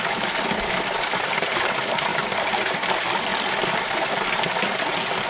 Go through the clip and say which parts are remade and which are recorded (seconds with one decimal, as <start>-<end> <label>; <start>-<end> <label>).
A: 0.0-5.3 recorded